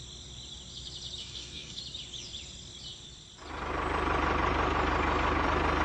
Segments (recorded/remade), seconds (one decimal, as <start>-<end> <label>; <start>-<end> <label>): 0.0-1.2 recorded; 1.2-1.8 remade; 1.8-5.8 recorded